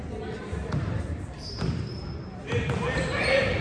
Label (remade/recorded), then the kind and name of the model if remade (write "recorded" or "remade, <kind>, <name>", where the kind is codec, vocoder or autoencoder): remade, vocoder, BigVGAN v2